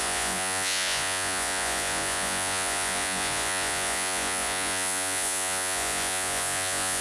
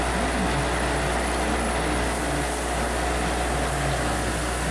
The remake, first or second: first